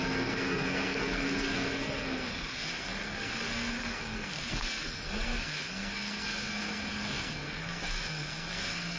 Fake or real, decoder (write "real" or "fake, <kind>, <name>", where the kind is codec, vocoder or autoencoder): fake, codec, SNAC